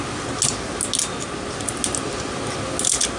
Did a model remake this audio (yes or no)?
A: no